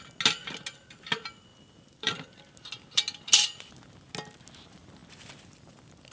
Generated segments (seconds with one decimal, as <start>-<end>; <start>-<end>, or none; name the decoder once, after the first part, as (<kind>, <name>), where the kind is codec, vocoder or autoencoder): 1.5-2.4 (vocoder, BigVGAN v2)